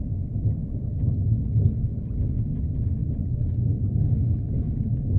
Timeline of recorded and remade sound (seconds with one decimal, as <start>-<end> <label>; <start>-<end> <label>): 0.0-5.2 recorded

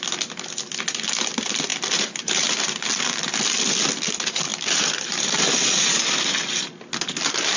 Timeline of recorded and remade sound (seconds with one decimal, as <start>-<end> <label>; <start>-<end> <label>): 0.0-7.6 recorded

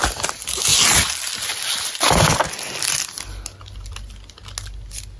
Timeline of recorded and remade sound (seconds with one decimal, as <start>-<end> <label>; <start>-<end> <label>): 0.0-5.2 recorded

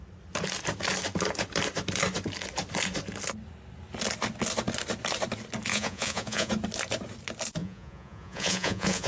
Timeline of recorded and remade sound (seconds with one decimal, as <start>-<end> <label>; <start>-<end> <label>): 0.0-5.7 recorded; 5.7-6.5 remade; 6.5-7.6 recorded; 7.6-9.1 remade

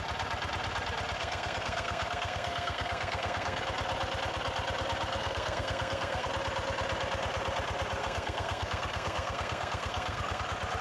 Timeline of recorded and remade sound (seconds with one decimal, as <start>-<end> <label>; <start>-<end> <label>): 0.0-1.2 recorded; 1.2-3.6 remade; 3.6-5.1 recorded; 5.1-6.3 remade; 6.3-8.0 recorded; 8.0-10.4 remade; 10.4-10.8 recorded

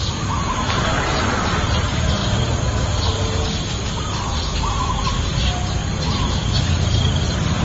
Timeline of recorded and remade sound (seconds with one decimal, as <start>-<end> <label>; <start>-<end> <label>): 0.0-7.6 recorded

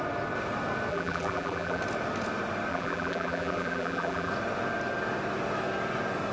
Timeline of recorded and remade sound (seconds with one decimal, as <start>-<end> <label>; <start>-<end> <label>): 0.0-0.9 recorded; 0.9-1.8 remade; 1.8-2.7 recorded; 2.7-4.3 remade; 4.3-6.3 recorded

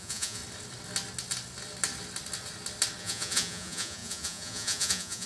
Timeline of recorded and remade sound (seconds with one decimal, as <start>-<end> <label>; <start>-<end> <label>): 0.0-0.4 remade; 0.4-3.0 recorded; 3.0-5.3 remade